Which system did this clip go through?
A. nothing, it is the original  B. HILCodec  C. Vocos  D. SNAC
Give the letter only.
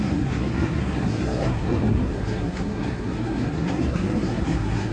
D